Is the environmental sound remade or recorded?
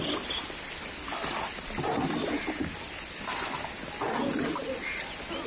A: recorded